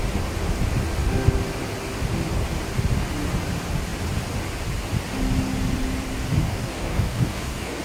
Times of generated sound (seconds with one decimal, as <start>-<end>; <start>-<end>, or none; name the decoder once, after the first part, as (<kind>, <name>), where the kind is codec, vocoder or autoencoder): 6.4-7.8 (codec, DAC)